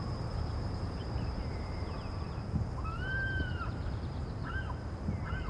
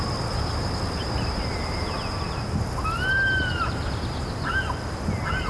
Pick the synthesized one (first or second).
first